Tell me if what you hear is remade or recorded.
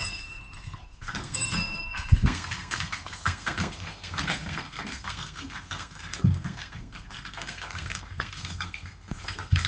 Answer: remade